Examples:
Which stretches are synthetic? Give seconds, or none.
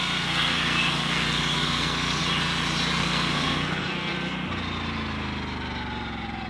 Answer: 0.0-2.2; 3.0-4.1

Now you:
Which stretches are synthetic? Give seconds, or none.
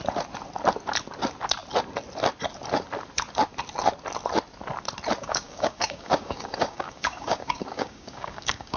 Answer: 5.2-8.8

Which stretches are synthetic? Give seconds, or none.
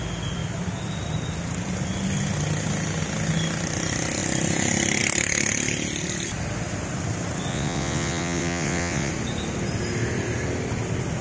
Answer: 7.5-9.1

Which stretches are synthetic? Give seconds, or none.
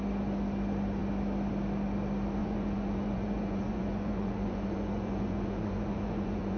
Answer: 2.4-6.6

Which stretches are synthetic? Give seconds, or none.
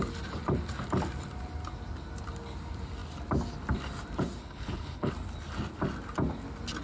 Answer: 4.4-5.1